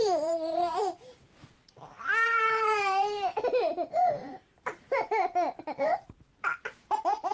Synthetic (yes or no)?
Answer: yes